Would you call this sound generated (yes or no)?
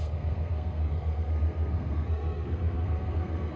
yes